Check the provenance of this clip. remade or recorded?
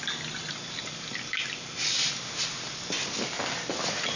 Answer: recorded